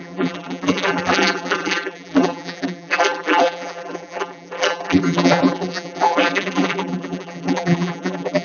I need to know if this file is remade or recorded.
remade